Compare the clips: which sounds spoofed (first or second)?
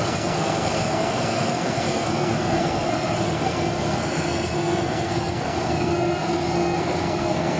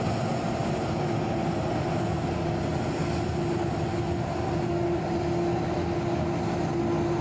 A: first